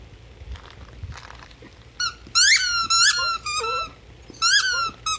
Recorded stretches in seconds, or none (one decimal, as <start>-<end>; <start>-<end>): 0.0-5.2

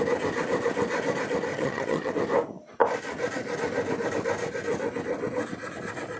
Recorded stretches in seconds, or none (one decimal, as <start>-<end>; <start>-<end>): 0.0-1.5; 2.1-6.2